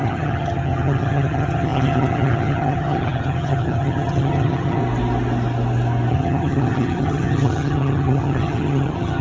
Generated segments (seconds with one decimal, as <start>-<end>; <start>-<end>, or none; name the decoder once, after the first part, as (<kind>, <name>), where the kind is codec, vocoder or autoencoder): 0.0-4.8 (vocoder, HiFi-GAN); 6.1-9.2